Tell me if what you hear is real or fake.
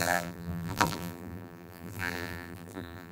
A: fake